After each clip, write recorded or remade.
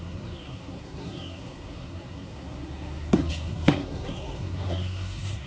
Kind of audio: remade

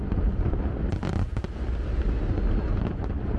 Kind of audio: recorded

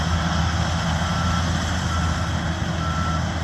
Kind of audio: recorded